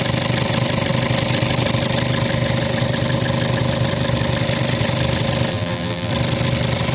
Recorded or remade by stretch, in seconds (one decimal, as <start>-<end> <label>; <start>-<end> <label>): 0.0-5.5 recorded; 5.5-6.1 remade; 6.1-6.9 recorded